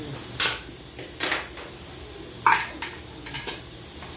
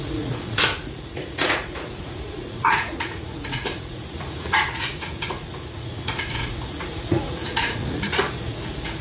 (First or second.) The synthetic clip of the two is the second